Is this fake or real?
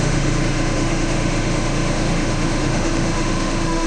fake